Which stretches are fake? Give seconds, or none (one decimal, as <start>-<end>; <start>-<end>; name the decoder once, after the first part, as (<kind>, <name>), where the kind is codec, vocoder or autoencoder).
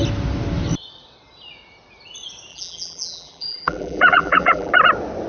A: 2.5-4.7 (vocoder, BigVGAN v2)